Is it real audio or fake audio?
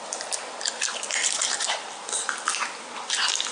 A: fake